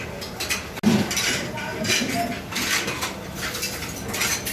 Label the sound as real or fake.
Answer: real